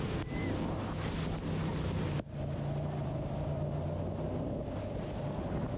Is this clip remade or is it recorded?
recorded